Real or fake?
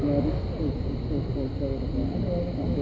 real